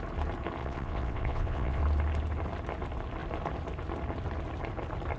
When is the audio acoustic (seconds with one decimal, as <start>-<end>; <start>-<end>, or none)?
0.0-0.6; 1.8-5.2